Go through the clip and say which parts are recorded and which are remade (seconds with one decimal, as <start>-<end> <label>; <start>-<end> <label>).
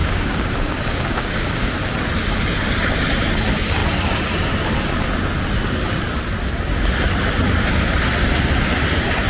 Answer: 0.0-1.7 remade; 1.7-9.3 recorded